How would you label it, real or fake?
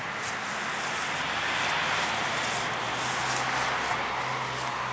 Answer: real